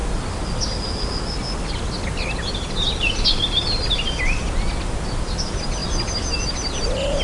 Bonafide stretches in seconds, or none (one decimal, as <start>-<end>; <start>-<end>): 0.0-7.2